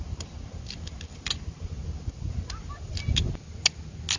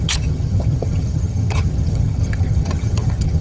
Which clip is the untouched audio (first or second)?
first